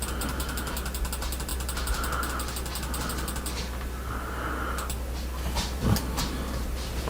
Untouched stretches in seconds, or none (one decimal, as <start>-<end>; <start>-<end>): 0.0-7.1